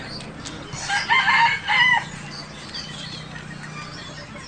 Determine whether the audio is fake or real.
real